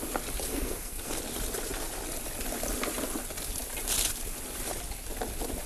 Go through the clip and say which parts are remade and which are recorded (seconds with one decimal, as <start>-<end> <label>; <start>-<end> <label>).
0.0-0.5 recorded; 0.5-1.2 remade; 1.2-5.7 recorded